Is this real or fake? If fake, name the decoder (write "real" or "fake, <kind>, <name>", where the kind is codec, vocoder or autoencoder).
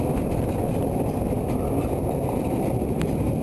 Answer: real